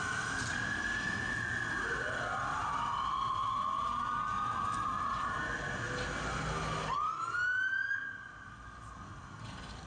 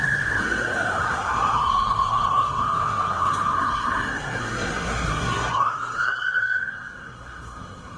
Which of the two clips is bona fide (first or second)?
first